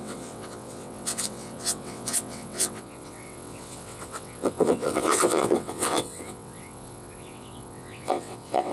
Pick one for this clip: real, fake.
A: fake